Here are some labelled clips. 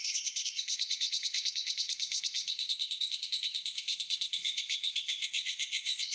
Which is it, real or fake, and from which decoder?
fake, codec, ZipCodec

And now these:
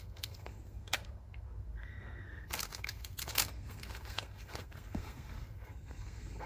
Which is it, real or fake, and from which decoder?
fake, codec, SNAC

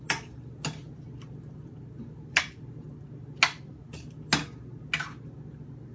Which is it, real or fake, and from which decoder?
real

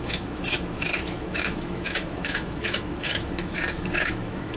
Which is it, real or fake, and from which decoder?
fake, autoencoder, DAC-VAE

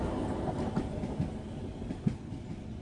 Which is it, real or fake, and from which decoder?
real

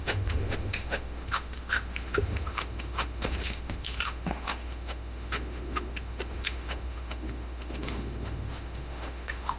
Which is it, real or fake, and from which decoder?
fake, autoencoder, DAC-VAE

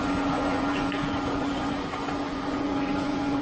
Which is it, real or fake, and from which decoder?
fake, vocoder, Vocos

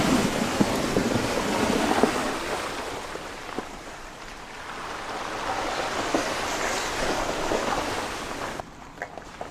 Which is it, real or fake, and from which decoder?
real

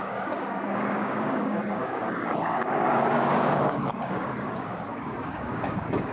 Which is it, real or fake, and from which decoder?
fake, codec, DAC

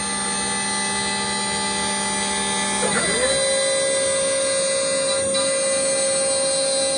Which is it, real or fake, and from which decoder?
real